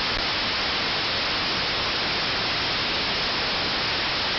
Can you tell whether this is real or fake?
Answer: real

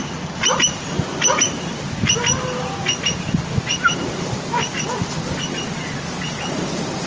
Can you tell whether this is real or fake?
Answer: real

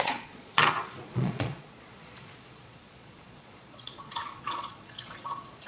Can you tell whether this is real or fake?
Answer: fake